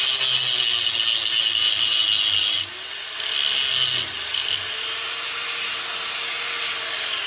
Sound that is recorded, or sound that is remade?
recorded